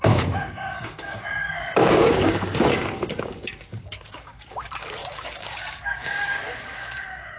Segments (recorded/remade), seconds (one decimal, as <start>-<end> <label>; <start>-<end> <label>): 0.0-7.4 remade